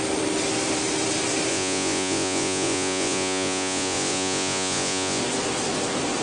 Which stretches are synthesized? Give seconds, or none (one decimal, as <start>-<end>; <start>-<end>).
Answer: 1.5-5.2